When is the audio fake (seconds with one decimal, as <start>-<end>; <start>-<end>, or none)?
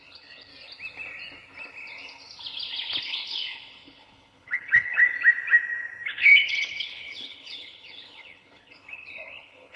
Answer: 0.0-0.5; 3.0-5.0; 6.1-9.8